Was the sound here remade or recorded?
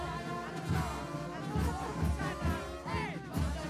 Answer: recorded